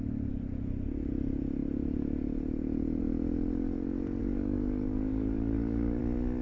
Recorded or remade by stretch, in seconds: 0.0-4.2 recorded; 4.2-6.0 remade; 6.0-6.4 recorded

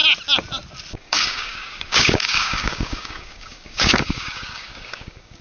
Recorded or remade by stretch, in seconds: 0.0-0.9 recorded; 0.9-5.4 remade

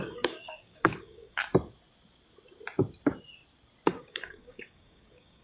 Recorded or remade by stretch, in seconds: 0.0-1.5 remade; 1.5-4.0 recorded; 4.0-5.4 remade

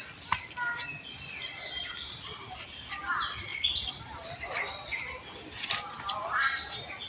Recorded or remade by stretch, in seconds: 0.0-7.1 recorded

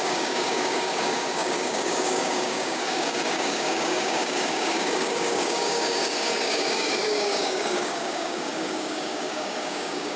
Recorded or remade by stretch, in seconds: 0.0-10.2 remade

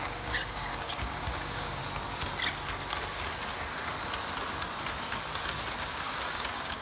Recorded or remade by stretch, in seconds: 0.0-1.8 remade; 1.8-5.9 recorded; 5.9-6.8 remade

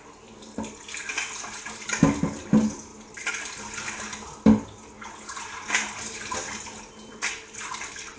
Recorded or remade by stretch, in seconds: 0.0-8.2 recorded

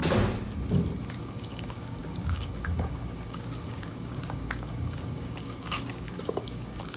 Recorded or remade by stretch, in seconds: 0.0-1.2 recorded; 1.2-7.0 remade